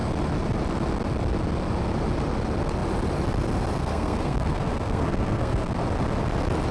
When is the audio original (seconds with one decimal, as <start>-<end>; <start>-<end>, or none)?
0.0-3.8; 5.7-6.7